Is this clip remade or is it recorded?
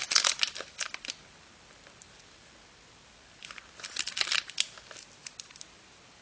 recorded